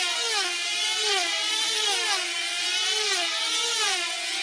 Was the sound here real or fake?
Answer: real